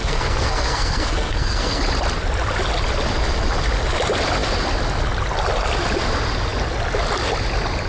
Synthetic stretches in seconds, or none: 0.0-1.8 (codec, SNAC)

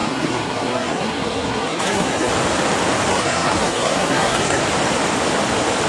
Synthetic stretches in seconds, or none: 0.0-2.3 (codec, SNAC); 3.1-4.6